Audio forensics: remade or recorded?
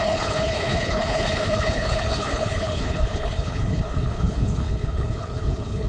remade